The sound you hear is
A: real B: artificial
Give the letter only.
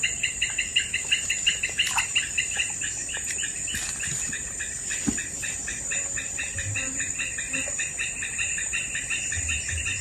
B